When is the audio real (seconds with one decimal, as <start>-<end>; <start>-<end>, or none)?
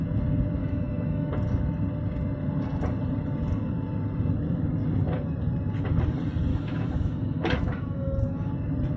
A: 0.0-0.6; 1.3-6.5; 8.5-9.0